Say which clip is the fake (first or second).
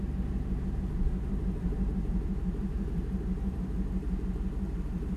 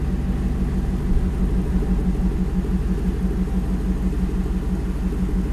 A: first